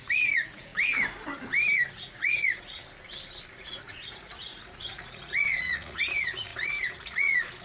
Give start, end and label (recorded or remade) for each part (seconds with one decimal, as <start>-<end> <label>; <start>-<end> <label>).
0.0-0.7 remade; 0.7-2.0 recorded; 2.0-2.8 remade; 2.8-3.5 recorded; 3.5-7.6 remade